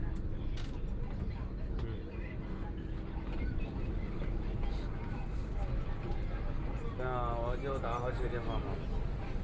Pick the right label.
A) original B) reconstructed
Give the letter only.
A